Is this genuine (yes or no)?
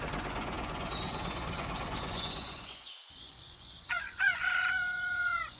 no